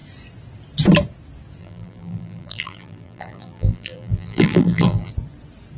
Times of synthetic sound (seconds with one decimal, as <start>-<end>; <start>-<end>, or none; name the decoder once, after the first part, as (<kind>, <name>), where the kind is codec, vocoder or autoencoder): 1.6-5.1 (vocoder, BigVGAN v2)